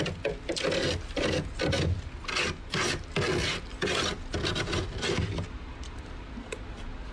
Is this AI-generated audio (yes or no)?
no